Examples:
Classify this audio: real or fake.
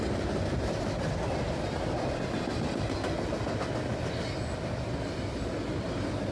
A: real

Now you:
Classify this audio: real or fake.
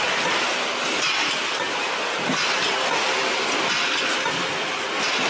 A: real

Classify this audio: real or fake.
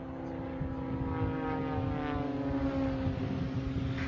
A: real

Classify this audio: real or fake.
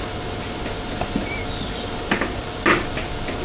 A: real